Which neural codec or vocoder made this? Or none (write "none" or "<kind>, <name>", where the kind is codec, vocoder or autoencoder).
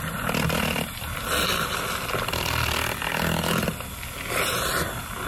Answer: none